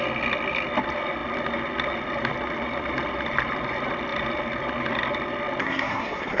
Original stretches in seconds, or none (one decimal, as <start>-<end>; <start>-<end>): 0.0-5.6